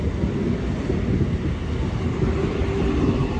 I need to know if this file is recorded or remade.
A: recorded